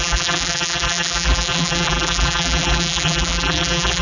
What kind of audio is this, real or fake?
fake